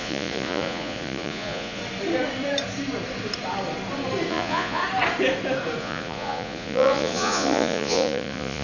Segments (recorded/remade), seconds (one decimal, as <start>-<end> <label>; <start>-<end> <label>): 0.0-1.8 remade; 1.8-4.3 recorded; 4.3-4.8 remade; 4.8-5.8 recorded; 5.8-8.6 remade